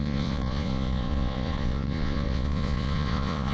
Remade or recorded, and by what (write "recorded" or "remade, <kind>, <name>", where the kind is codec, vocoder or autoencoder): remade, vocoder, Vocos